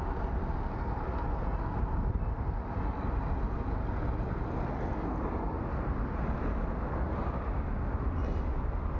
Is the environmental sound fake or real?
real